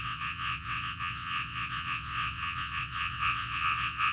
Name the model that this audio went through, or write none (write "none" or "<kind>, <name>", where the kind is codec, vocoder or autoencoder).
vocoder, WaveNeXt